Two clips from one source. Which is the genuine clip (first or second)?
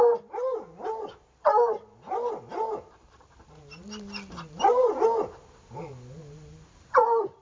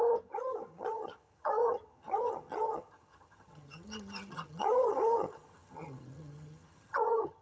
first